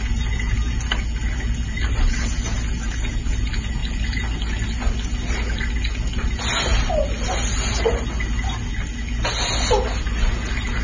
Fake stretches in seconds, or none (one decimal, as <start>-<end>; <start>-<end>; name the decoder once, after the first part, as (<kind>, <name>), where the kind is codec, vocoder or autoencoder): none